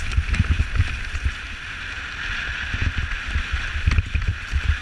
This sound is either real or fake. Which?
real